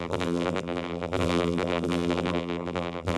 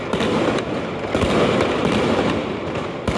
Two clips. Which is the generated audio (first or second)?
first